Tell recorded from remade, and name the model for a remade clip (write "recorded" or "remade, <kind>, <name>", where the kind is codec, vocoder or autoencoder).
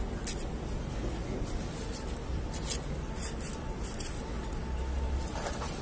recorded